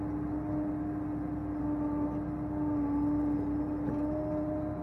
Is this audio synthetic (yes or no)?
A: no